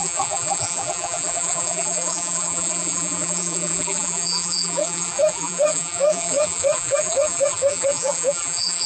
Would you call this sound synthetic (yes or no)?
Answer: yes